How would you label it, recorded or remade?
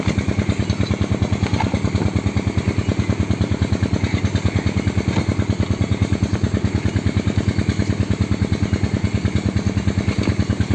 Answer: recorded